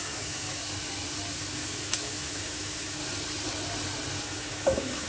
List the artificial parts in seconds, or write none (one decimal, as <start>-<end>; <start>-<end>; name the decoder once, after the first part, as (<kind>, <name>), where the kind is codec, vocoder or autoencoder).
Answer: 0.0-0.6 (autoencoder, DAC-VAE); 1.4-3.0; 4.2-5.1